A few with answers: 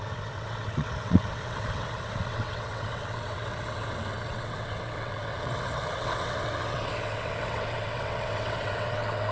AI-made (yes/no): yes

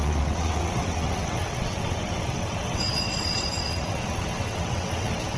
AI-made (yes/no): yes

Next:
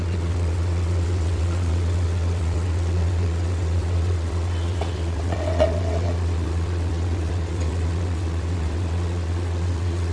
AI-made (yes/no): yes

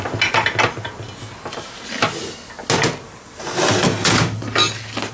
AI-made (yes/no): no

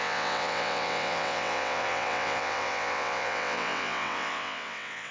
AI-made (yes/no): yes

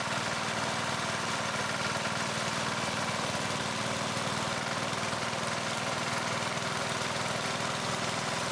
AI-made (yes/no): no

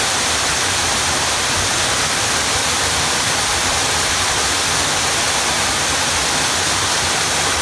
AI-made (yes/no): no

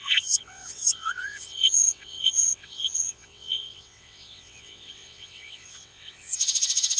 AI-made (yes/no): yes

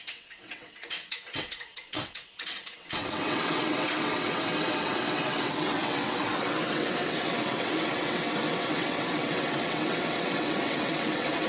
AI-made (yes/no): yes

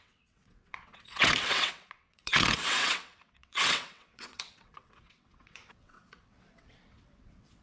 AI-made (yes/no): yes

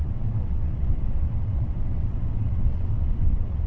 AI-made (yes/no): yes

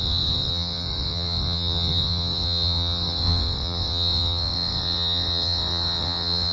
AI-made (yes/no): yes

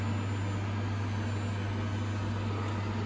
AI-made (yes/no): no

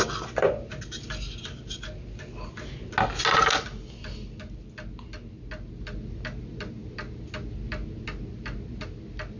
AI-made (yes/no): no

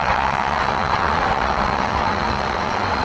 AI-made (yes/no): yes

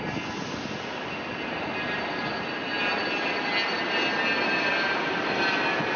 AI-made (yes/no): no